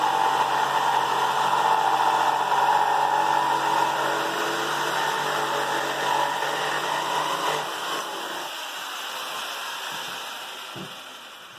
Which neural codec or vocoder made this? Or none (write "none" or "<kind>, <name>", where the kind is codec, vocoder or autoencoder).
none